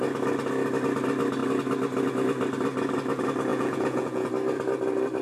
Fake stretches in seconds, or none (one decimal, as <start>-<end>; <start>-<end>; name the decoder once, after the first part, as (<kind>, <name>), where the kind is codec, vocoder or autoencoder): 3.5-4.3 (vocoder, Vocos)